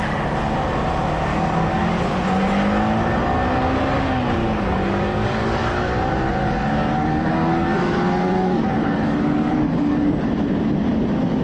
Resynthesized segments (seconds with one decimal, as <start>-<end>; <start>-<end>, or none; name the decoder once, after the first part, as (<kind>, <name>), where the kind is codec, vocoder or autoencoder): 1.3-1.9 (codec, DAC); 4.4-6.0; 6.4-10.3